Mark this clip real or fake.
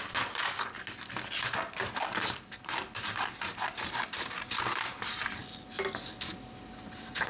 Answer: real